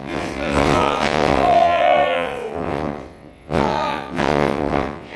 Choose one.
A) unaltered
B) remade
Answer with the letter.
B